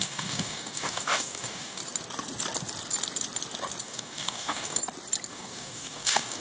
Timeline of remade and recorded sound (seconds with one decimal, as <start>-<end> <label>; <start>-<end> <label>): 0.0-1.8 remade; 1.8-3.8 recorded; 3.8-4.8 remade; 4.8-5.3 recorded; 5.3-6.4 remade